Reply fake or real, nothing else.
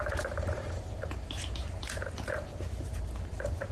fake